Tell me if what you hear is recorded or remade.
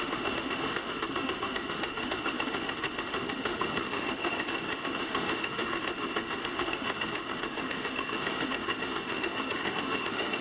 remade